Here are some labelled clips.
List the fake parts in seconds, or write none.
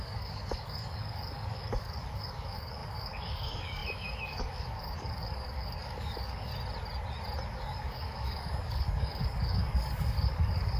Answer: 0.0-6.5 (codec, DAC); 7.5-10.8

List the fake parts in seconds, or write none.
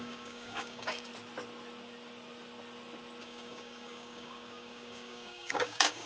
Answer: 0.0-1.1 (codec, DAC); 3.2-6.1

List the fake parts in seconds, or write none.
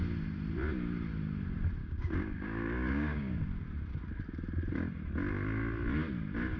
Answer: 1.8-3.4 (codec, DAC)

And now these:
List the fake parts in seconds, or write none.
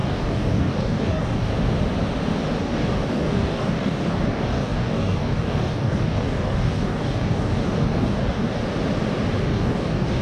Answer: 0.0-1.5 (codec, DAC); 2.6-8.6; 9.4-10.2